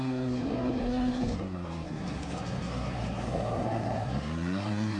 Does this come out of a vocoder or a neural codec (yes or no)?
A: yes